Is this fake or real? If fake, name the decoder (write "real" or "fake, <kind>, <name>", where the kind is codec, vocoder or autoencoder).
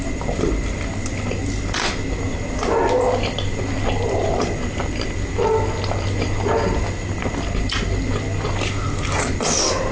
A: real